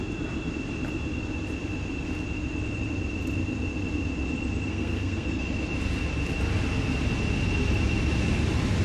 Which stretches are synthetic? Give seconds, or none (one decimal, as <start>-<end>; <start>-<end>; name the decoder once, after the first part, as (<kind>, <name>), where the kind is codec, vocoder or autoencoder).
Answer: 4.7-5.4 (codec, SNAC)